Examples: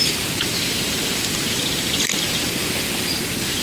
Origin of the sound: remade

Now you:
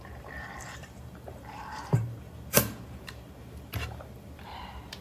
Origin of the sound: remade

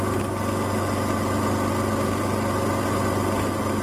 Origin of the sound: recorded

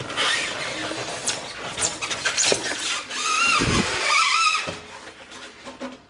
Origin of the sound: remade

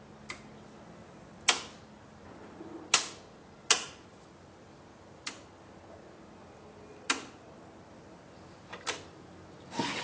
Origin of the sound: recorded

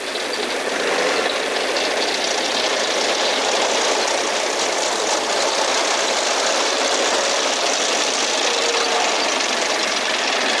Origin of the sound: recorded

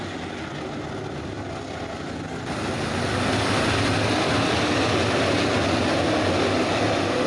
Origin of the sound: recorded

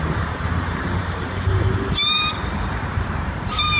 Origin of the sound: remade